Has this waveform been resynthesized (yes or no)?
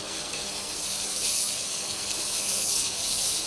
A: yes